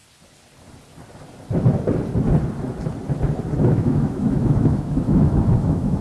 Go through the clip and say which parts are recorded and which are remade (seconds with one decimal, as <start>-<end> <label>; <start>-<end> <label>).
0.0-3.6 recorded; 3.6-6.0 remade